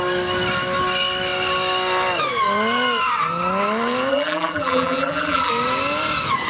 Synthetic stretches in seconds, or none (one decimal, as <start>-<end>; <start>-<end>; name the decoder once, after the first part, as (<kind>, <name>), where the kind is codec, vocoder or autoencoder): 4.1-5.5 (vocoder, BigVGAN v2)